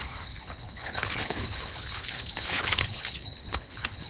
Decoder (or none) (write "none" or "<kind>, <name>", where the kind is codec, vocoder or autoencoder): codec, HILCodec